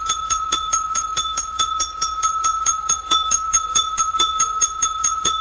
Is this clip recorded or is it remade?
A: remade